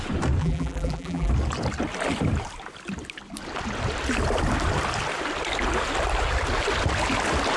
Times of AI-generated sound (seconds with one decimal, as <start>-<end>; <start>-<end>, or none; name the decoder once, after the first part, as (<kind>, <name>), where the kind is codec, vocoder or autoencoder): 0.4-1.3 (vocoder, BigVGAN v2)